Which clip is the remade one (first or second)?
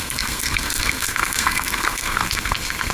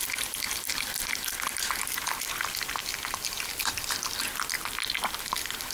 first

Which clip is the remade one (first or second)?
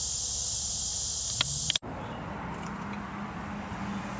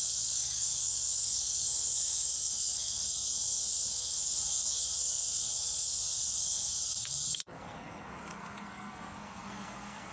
second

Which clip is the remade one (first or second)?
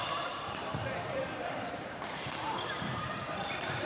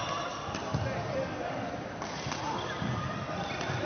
first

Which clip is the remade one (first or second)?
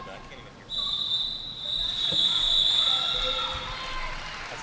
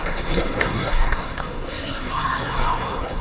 second